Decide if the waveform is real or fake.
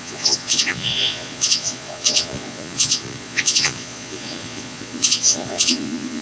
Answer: fake